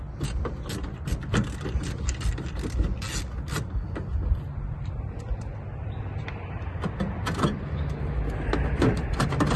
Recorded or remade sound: recorded